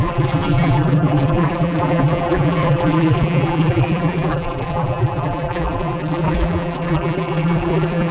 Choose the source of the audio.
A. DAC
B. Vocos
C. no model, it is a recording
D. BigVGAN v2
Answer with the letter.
D